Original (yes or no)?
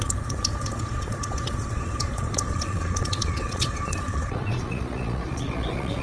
no